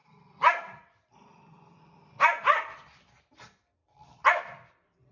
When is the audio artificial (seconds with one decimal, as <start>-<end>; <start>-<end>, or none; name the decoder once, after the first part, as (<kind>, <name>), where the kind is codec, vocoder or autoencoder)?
0.0-1.8 (vocoder, BigVGAN v2); 3.8-5.1